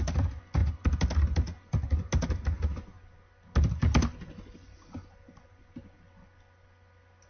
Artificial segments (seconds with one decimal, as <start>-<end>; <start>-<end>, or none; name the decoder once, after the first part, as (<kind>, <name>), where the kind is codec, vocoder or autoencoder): none